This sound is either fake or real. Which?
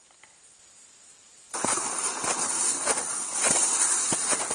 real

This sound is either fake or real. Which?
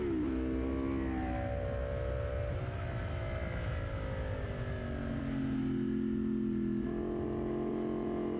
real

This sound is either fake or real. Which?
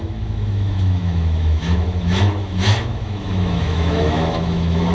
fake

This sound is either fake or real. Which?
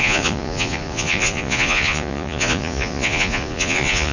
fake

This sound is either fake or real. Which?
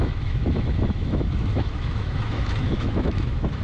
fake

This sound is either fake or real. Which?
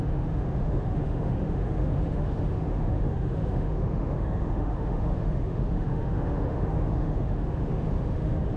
fake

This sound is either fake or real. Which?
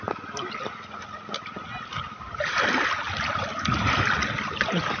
real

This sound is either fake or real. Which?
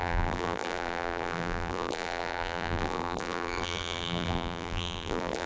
fake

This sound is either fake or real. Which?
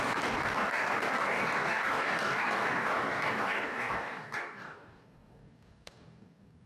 fake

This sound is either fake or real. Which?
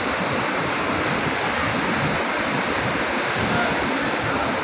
real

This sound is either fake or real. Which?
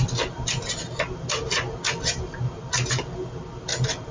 real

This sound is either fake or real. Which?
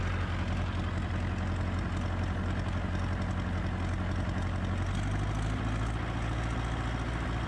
real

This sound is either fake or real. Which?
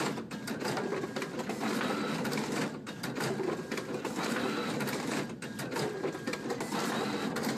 real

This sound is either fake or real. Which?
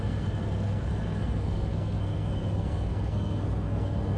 fake